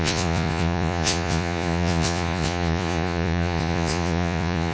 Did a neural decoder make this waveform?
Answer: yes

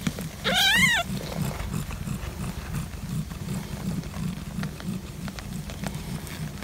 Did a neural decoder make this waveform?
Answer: no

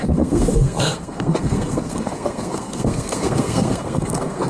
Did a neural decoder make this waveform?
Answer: yes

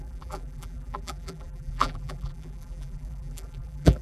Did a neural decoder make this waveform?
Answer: yes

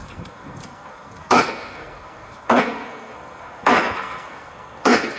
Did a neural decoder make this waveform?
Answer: yes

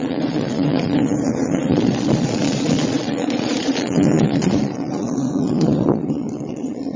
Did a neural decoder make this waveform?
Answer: yes